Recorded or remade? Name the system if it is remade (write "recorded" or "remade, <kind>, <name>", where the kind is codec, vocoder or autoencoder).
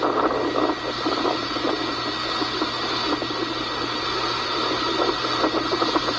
recorded